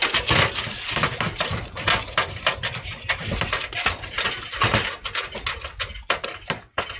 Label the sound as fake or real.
real